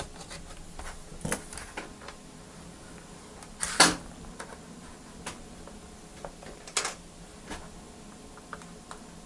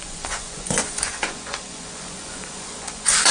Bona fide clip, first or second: first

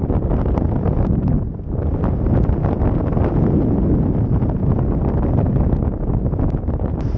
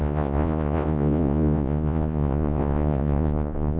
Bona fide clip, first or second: first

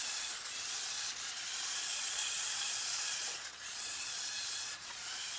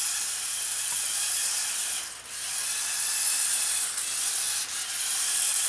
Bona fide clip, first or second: second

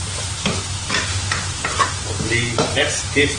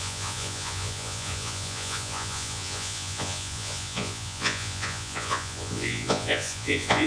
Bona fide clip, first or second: first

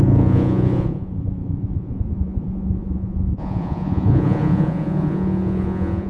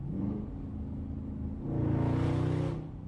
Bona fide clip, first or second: second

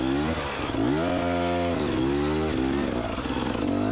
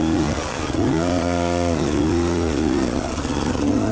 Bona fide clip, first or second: first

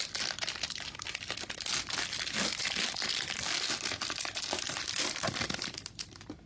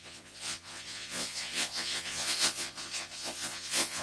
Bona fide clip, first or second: first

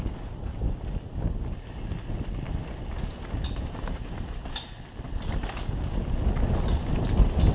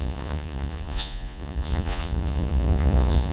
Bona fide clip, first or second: first